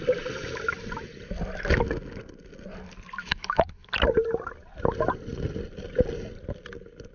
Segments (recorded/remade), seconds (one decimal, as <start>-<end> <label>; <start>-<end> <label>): 0.0-3.2 recorded; 3.2-3.9 remade; 3.9-7.1 recorded